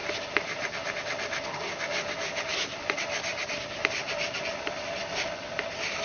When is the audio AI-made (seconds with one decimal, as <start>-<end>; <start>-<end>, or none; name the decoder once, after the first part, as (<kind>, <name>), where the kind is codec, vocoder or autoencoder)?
2.5-4.0 (vocoder, BigVGAN v2); 4.5-5.0